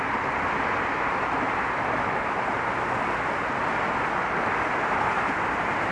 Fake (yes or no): no